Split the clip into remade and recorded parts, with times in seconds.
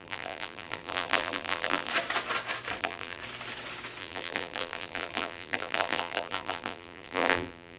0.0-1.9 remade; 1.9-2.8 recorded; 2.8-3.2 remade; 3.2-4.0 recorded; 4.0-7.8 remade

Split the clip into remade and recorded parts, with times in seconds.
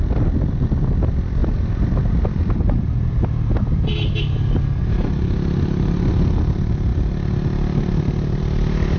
0.0-1.4 recorded; 1.4-3.8 remade; 3.8-9.0 recorded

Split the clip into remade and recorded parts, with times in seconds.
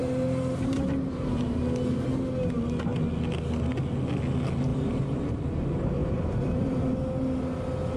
0.0-1.6 remade; 1.6-4.7 recorded; 4.7-5.4 remade; 5.4-6.0 recorded; 6.0-6.9 remade; 6.9-8.0 recorded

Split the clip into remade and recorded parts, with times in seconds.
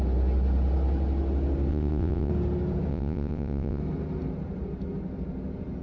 0.0-1.7 recorded; 1.7-2.3 remade; 2.3-2.9 recorded; 2.9-3.8 remade; 3.8-5.8 recorded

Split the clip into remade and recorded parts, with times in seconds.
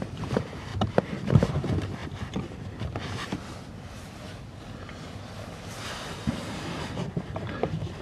0.0-0.7 remade; 0.7-1.3 recorded; 1.3-2.0 remade; 2.0-6.1 recorded; 6.1-8.0 remade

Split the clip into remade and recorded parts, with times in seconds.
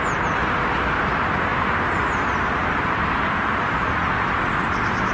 0.0-5.1 recorded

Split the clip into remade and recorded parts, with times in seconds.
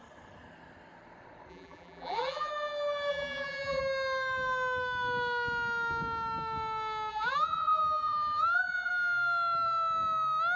0.0-1.5 recorded; 1.5-2.5 remade; 2.5-3.1 recorded; 3.1-3.8 remade; 3.8-7.1 recorded; 7.1-8.9 remade; 8.9-10.6 recorded